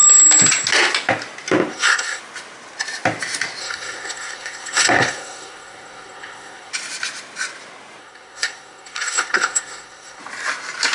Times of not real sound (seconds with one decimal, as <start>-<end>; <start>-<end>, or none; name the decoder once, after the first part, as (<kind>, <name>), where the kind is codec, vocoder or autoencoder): 1.7-2.2 (codec, SNAC); 3.6-6.7; 8.0-10.2

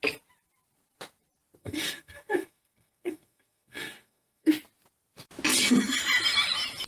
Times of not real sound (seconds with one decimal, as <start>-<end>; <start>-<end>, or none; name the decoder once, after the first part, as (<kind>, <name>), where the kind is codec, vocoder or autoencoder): 1.6-4.5 (codec, SNAC)

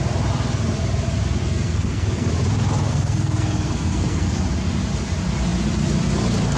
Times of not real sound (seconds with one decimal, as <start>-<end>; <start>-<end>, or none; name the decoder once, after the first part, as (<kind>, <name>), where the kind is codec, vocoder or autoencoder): 1.4-2.3 (codec, SNAC); 2.9-4.4

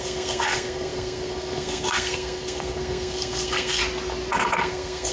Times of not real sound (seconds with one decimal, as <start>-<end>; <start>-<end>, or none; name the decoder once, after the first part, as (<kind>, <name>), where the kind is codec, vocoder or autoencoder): 0.0-3.8 (codec, SNAC); 4.3-5.1

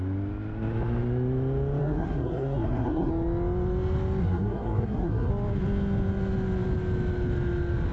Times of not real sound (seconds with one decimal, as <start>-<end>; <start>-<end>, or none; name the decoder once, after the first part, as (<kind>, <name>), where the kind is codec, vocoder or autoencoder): 1.8-3.1 (codec, SNAC); 4.2-5.3